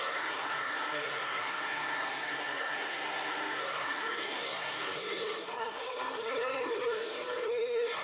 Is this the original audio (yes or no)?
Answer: no